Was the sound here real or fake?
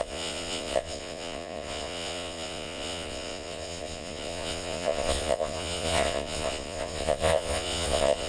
fake